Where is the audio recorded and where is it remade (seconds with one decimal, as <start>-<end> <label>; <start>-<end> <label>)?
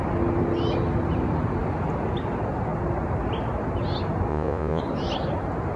0.0-4.3 recorded; 4.3-4.8 remade; 4.8-5.8 recorded